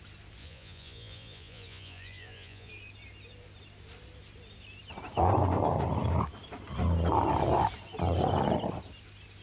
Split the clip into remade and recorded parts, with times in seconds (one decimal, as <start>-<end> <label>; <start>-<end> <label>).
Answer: 0.0-0.4 recorded; 0.4-2.7 remade; 2.7-9.4 recorded